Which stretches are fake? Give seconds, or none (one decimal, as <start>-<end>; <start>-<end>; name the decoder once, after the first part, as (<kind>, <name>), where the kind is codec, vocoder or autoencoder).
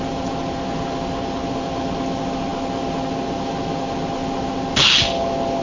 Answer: none